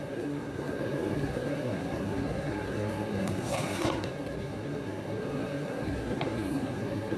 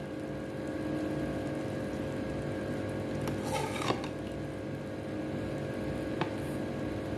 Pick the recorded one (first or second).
second